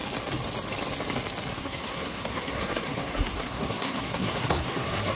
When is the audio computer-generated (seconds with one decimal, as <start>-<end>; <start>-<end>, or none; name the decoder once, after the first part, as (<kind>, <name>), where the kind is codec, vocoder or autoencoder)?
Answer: 1.5-5.2 (codec, SNAC)